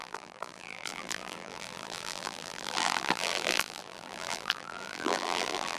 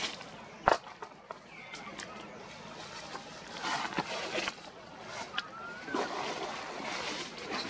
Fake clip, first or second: first